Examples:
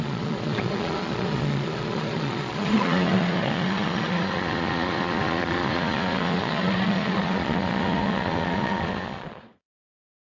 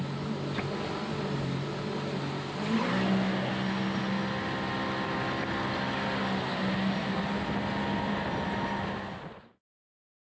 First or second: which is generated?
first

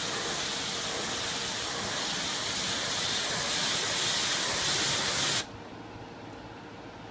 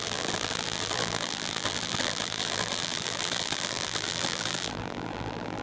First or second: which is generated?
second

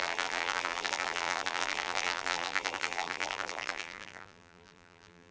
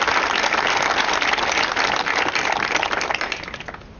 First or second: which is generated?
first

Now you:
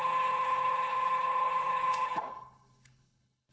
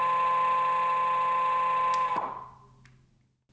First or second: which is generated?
first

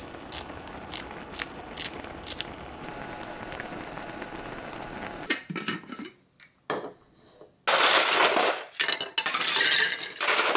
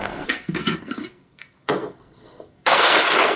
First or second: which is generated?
second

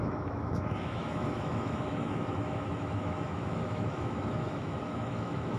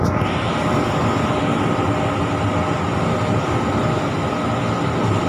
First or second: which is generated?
first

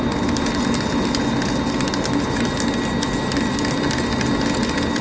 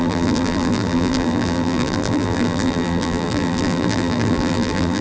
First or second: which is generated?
second